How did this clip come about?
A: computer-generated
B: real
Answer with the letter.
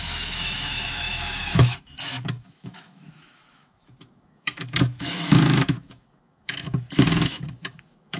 A